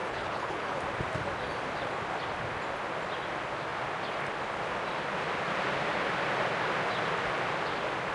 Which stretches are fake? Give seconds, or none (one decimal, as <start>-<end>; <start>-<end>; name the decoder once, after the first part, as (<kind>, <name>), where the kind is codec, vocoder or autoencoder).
0.0-0.8 (codec, HILCodec)